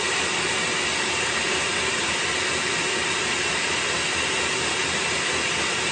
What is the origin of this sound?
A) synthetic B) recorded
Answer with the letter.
B